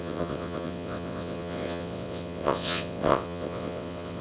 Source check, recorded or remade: remade